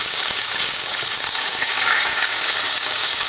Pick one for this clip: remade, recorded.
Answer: remade